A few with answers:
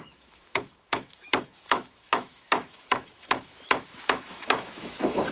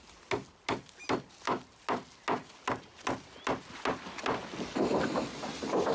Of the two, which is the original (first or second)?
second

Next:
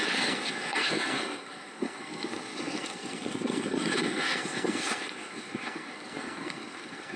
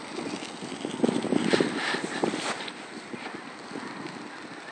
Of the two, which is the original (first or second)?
second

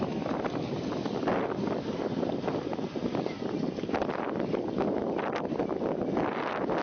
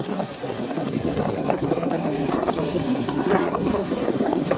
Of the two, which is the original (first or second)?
first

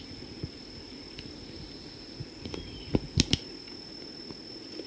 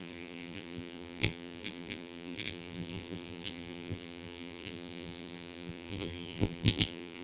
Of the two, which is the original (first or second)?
first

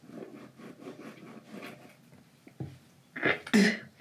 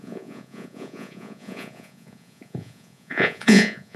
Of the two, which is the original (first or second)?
first